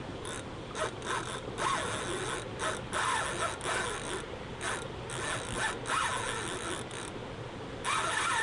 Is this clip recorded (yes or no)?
yes